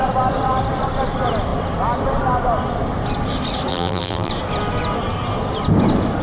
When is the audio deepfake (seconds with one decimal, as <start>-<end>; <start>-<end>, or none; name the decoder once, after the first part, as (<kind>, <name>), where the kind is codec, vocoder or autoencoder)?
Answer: 3.7-4.3 (vocoder, BigVGAN v2)

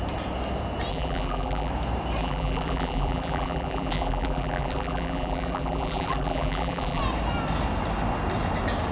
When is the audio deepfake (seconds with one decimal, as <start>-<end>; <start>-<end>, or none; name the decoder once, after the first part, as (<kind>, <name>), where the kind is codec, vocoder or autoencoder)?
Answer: 0.9-1.7 (vocoder, BigVGAN v2); 2.2-7.0

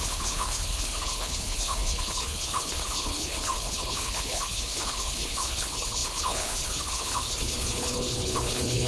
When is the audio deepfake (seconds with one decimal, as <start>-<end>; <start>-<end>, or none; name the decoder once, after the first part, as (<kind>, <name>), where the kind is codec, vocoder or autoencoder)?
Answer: 0.0-8.9 (codec, HILCodec)

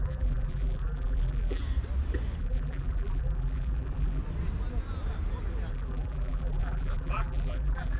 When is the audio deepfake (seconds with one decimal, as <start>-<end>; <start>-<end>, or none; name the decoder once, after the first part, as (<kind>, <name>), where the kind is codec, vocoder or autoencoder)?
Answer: 0.0-1.6 (vocoder, BigVGAN v2); 2.4-4.2; 5.7-8.0

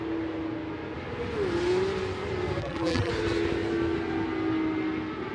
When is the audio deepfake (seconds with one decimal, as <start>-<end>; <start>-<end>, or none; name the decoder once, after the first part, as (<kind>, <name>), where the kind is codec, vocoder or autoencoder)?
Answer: 2.6-3.1 (vocoder, BigVGAN v2)